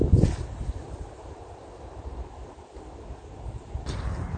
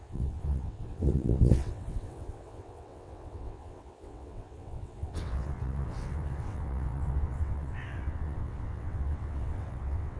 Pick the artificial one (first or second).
second